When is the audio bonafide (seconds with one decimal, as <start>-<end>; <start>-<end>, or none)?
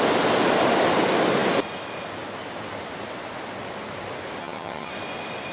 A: 0.0-4.4; 4.9-5.5